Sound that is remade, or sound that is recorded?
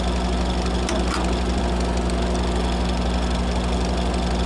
recorded